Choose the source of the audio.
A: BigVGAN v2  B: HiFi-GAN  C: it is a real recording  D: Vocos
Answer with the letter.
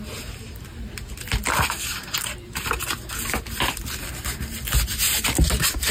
C